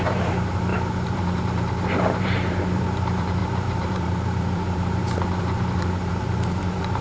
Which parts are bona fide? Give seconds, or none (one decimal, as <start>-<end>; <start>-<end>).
none